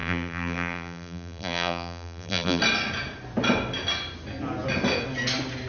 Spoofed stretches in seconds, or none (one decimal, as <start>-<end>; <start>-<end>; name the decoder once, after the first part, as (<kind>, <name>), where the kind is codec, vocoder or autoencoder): 0.0-2.6 (vocoder, BigVGAN v2)